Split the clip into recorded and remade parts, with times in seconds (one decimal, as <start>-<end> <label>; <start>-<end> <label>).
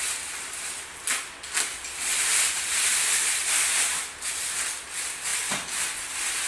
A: 0.0-6.5 recorded